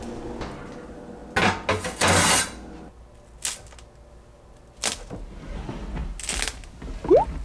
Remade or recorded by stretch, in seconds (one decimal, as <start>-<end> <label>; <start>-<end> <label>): 0.0-7.4 recorded

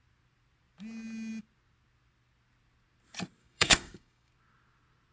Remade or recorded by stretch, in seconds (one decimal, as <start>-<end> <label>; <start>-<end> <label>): 0.0-3.4 recorded; 3.4-4.3 remade; 4.3-5.1 recorded

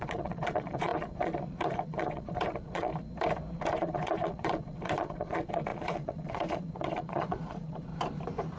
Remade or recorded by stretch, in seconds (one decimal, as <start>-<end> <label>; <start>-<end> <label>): 0.0-2.9 remade; 2.9-3.8 recorded; 3.8-7.9 remade; 7.9-8.6 recorded

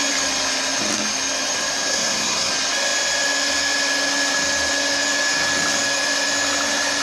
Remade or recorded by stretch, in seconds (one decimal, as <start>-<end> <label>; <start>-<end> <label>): 0.0-1.9 recorded; 1.9-2.5 remade; 2.5-7.0 recorded